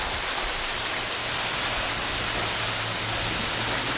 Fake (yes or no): no